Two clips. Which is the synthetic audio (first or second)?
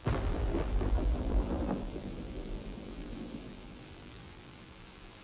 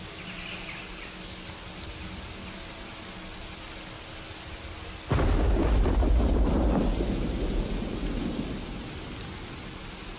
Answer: first